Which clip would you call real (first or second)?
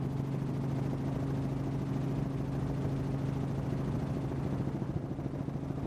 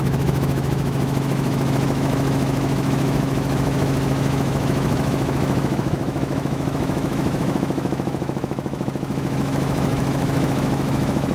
first